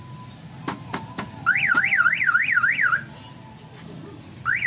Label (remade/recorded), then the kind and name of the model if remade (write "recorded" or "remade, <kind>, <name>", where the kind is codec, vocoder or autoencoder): recorded